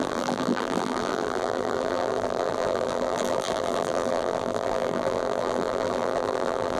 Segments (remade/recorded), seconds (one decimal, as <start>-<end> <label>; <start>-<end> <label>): 0.0-6.8 remade